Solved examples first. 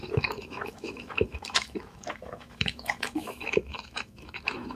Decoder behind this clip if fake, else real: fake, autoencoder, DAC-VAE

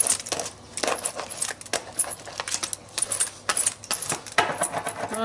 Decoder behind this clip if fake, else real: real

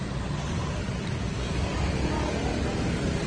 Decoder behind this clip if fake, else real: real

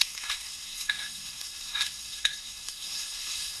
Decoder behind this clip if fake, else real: fake, codec, SNAC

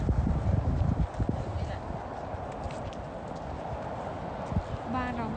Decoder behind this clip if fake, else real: real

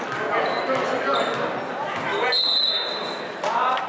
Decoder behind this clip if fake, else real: real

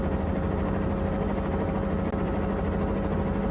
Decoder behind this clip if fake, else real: real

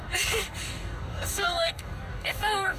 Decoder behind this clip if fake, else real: fake, codec, DAC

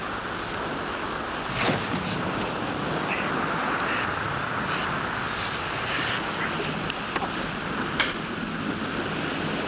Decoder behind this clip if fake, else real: real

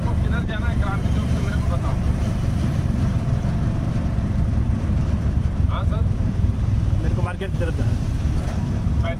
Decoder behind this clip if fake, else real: fake, vocoder, BigVGAN v2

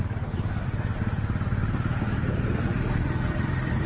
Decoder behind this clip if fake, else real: real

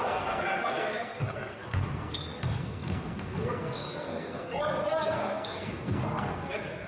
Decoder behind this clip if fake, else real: fake, codec, SNAC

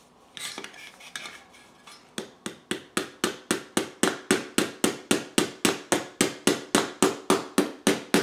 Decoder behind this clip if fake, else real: real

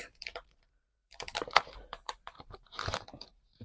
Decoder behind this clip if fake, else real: fake, vocoder, BigVGAN v2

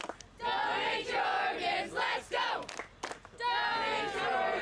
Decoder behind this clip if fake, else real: real